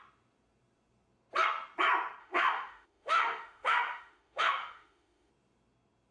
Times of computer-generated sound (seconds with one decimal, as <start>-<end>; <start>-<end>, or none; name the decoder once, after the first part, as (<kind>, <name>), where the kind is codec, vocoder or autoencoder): 2.2-5.3 (autoencoder, DAC-VAE)